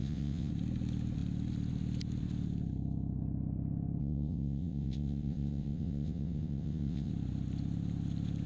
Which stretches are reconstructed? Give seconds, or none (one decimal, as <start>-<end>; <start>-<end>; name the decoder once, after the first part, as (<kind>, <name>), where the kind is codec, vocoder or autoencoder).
0.0-0.5 (vocoder, WaveNeXt); 4.0-7.1